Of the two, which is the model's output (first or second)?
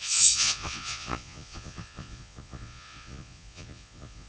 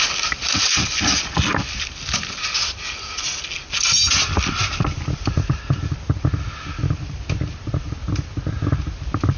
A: first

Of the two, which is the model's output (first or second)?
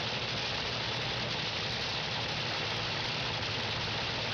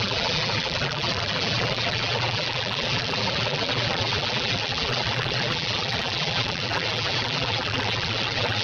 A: second